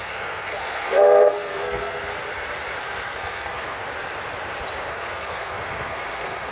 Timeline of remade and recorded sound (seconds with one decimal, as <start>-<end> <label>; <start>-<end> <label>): 0.0-2.1 remade; 2.1-2.8 recorded; 2.8-3.8 remade; 3.8-4.9 recorded; 4.9-6.5 remade